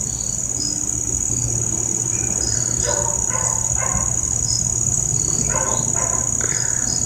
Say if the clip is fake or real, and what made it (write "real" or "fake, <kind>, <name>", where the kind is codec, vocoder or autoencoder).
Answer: real